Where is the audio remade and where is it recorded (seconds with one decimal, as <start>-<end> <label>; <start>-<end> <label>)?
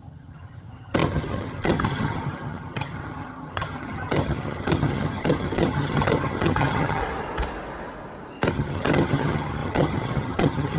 0.0-7.0 remade; 7.0-8.5 recorded; 8.5-10.8 remade